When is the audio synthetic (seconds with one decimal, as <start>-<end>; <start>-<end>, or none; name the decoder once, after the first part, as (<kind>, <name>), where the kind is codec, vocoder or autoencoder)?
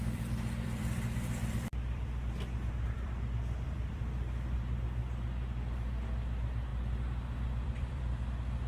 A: 0.0-5.0 (vocoder, BigVGAN v2); 5.6-8.7